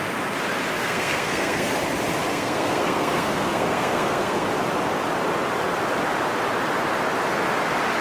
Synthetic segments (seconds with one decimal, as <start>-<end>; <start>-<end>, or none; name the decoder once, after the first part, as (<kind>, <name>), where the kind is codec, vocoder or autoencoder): 0.8-1.7 (codec, SNAC); 2.3-4.5